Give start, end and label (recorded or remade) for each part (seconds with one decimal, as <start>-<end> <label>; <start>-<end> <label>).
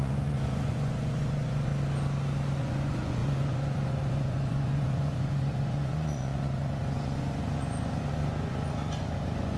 0.0-1.7 remade; 1.7-2.6 recorded; 2.6-9.6 remade